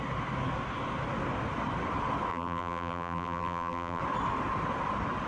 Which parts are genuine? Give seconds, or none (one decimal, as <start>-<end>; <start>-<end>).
0.0-2.3; 4.0-5.3